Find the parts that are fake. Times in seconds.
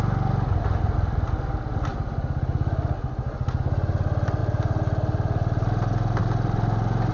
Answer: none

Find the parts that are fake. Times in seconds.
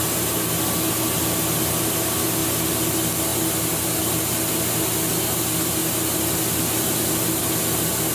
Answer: none